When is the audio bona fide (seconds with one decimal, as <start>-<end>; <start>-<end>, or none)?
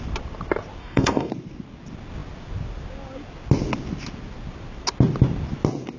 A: 0.0-0.8; 1.3-6.0